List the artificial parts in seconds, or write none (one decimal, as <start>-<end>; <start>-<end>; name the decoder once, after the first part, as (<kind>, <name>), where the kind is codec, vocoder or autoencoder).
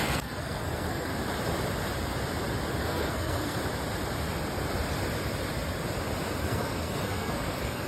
0.0-1.1 (codec, SNAC); 2.8-3.6; 6.4-7.9